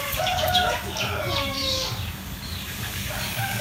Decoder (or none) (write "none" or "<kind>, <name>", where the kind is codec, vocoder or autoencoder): codec, DAC